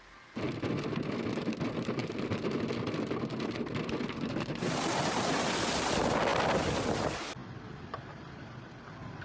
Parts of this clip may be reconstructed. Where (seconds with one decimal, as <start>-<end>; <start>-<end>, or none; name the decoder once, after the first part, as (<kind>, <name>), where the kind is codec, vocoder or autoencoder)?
none